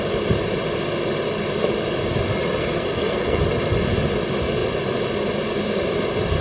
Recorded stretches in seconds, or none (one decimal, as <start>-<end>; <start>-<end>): 0.0-2.6; 3.4-6.4